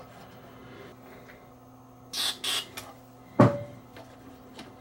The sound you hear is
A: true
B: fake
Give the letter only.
A